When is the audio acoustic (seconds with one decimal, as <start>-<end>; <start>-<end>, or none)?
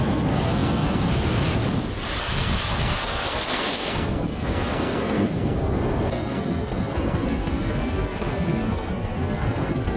1.6-2.2